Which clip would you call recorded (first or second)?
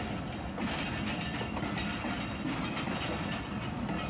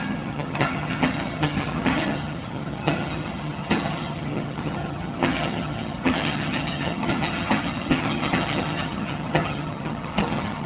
first